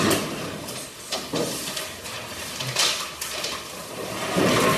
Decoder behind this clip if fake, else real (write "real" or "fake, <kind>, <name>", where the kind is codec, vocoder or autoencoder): real